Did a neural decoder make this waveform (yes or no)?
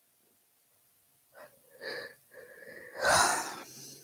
no